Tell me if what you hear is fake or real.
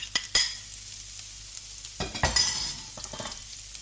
real